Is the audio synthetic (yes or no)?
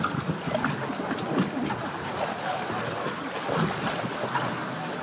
no